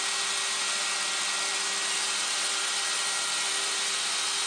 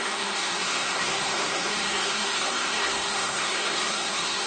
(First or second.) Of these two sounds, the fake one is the second